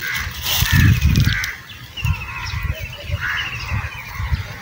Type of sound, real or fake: real